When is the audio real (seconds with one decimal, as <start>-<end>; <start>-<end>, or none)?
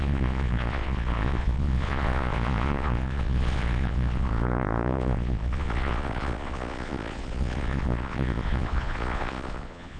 none